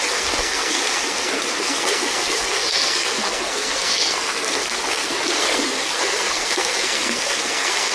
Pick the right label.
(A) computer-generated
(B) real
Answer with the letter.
A